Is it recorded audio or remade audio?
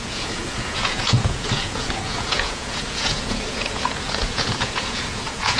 remade